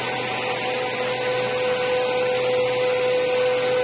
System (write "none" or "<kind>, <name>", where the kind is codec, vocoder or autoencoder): none